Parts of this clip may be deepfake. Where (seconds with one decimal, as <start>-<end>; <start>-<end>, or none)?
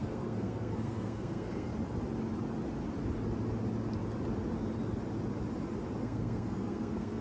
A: 0.0-1.7; 6.0-7.2